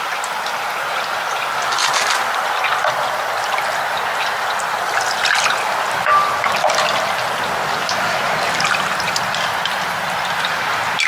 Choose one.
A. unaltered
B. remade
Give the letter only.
A